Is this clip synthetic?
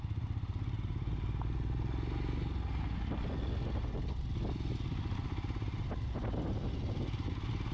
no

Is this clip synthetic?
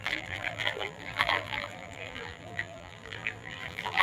yes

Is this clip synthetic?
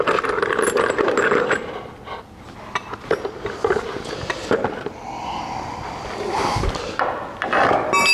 no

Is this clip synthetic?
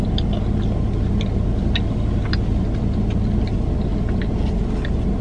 no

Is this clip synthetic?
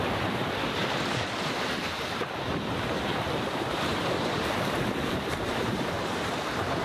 yes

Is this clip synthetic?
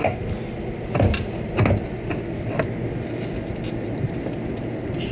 no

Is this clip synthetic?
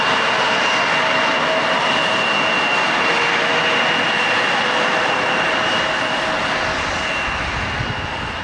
no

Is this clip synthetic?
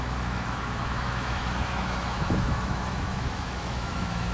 yes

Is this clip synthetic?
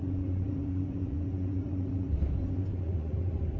yes